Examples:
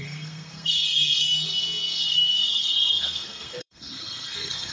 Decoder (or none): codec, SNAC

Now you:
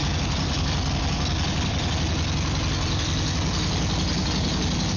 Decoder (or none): none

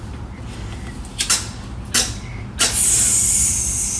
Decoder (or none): none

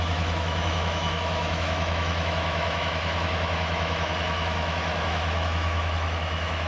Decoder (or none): autoencoder, DAC-VAE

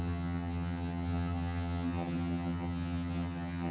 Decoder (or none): vocoder, HiFi-GAN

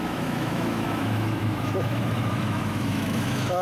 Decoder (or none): autoencoder, DAC-VAE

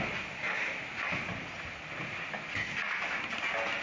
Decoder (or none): none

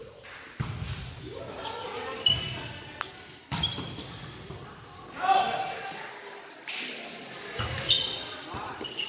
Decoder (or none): none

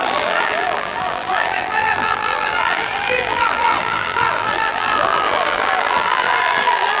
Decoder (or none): vocoder, BigVGAN v2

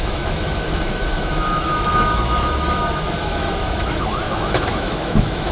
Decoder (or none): autoencoder, DAC-VAE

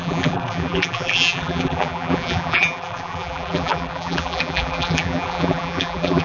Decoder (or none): vocoder, BigVGAN v2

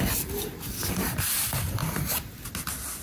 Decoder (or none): none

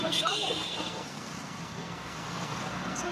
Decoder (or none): codec, SNAC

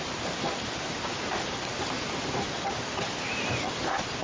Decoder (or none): vocoder, BigVGAN v2